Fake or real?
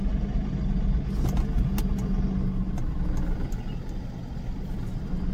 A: real